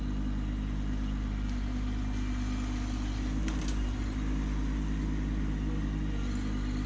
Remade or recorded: recorded